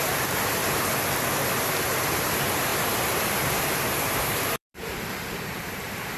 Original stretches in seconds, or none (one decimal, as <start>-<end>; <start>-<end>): 0.6-2.2